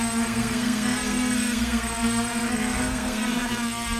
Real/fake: fake